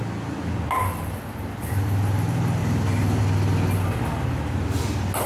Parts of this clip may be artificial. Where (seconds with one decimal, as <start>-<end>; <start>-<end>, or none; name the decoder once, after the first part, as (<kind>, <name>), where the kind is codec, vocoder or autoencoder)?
2.6-3.2 (vocoder, BigVGAN v2)